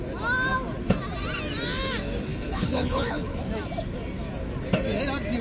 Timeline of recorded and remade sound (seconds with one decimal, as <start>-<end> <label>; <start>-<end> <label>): 0.0-2.3 recorded; 2.3-3.4 remade; 3.4-5.4 recorded